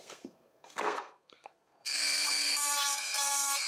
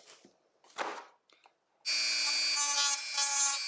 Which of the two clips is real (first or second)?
second